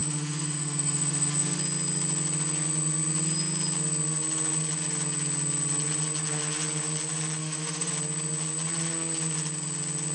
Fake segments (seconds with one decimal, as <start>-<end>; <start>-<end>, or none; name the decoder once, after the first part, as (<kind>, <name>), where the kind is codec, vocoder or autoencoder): 0.0-1.6 (autoencoder, DAC-VAE); 7.4-7.9